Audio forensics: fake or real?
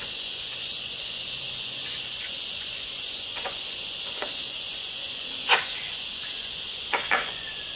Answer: fake